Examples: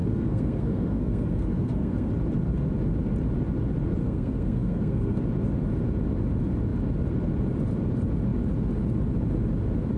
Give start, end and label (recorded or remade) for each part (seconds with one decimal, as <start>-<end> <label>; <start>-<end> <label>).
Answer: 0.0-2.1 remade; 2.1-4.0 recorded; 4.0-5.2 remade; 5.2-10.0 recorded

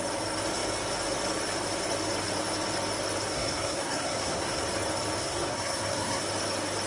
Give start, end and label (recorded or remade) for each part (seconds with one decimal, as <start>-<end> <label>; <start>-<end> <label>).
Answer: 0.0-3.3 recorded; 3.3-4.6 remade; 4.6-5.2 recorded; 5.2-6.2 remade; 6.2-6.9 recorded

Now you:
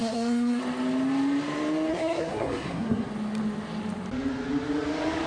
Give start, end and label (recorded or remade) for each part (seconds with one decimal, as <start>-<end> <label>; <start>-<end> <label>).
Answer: 0.0-0.6 remade; 0.6-1.9 recorded; 1.9-3.1 remade; 3.1-5.3 recorded